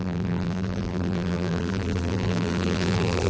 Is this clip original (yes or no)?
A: no